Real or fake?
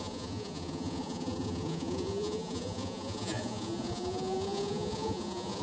fake